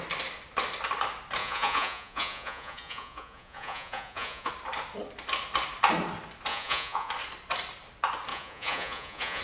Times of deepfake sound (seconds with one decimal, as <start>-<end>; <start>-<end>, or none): 1.4-4.5; 6.5-7.1; 8.3-9.4